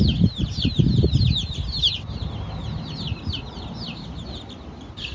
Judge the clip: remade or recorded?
recorded